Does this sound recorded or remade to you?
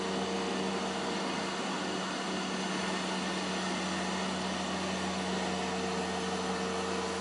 recorded